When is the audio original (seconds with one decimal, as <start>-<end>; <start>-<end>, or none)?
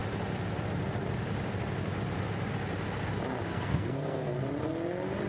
0.0-3.5; 4.3-5.3